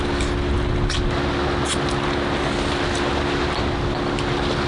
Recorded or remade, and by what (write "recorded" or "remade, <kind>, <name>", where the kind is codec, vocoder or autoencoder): recorded